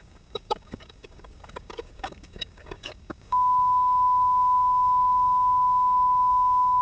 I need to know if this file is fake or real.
fake